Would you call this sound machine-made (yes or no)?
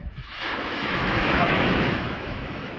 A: yes